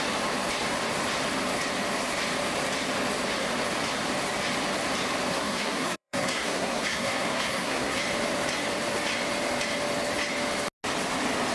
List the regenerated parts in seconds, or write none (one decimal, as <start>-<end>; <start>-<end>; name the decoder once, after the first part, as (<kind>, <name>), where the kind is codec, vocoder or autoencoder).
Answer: 5.3-8.0 (codec, SNAC)